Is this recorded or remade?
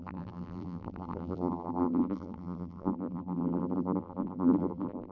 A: remade